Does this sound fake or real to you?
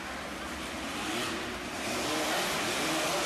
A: real